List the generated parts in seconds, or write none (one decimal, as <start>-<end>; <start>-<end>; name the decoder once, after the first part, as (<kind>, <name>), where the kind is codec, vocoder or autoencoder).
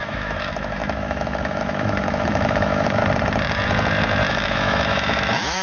0.0-3.0 (autoencoder, DAC-VAE); 4.3-5.6